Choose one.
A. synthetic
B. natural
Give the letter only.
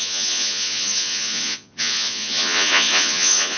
A